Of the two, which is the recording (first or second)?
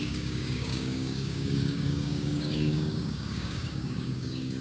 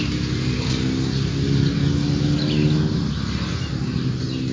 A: second